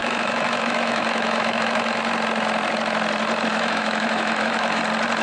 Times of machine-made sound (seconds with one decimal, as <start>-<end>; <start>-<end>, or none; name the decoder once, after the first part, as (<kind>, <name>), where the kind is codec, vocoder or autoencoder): 0.0-2.0 (autoencoder, DAC-VAE); 3.5-4.8